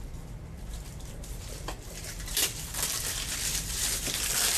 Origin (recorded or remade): remade